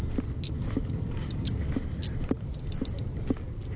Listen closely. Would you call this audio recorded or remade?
recorded